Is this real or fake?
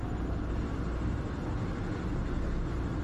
real